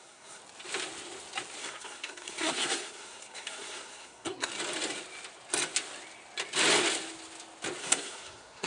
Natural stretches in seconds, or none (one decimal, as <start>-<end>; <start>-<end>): 0.4-1.6; 4.5-7.8